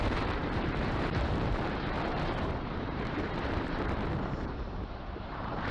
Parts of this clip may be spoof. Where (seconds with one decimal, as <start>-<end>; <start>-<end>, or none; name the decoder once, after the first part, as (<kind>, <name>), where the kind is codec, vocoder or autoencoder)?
0.0-5.7 (vocoder, BigVGAN v2)